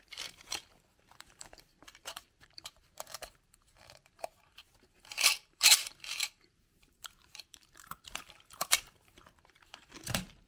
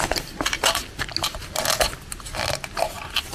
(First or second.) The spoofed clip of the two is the first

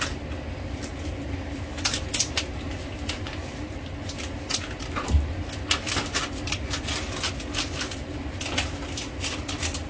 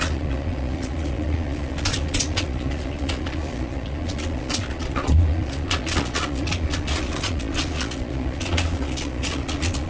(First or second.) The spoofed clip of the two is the second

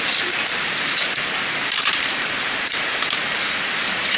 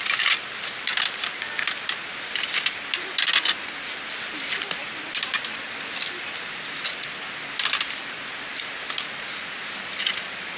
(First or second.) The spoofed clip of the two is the first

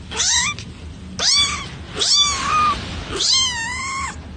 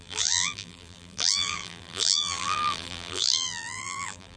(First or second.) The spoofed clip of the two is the second